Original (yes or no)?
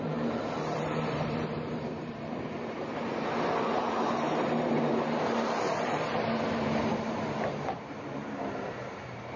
no